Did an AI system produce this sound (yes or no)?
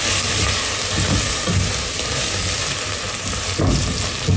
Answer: no